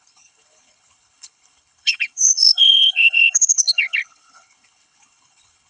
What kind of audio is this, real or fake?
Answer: fake